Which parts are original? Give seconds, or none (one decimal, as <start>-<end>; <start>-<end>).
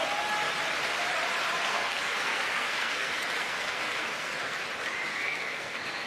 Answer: 0.0-1.7; 4.6-5.1